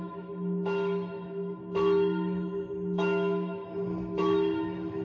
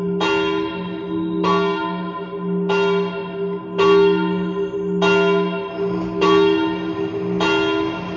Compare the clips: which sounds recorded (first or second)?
second